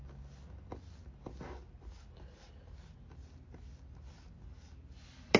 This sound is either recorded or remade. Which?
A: recorded